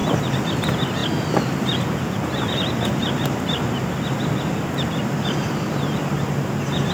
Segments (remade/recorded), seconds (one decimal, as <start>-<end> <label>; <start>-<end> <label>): 0.0-0.5 recorded; 0.5-1.0 remade; 1.0-5.1 recorded; 5.1-6.9 remade